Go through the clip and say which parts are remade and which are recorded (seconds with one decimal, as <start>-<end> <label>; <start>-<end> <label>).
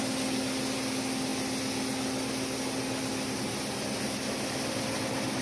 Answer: 0.0-5.4 recorded